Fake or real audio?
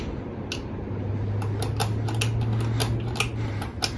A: real